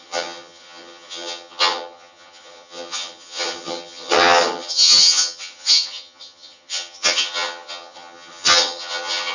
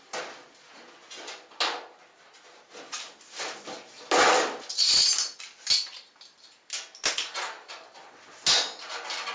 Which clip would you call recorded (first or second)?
second